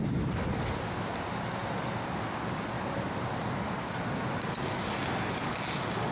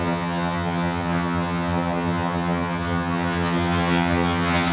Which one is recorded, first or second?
first